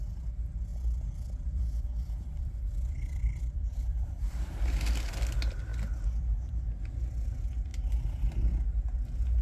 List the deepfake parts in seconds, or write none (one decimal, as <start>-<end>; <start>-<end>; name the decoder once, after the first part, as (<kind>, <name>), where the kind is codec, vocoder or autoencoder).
0.7-4.5 (vocoder, BigVGAN v2)